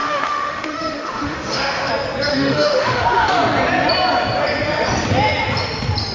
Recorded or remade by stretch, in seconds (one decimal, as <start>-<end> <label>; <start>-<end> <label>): 0.0-1.9 remade; 1.9-2.3 recorded; 2.3-3.3 remade; 3.3-6.1 recorded